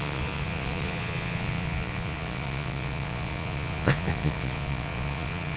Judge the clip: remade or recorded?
remade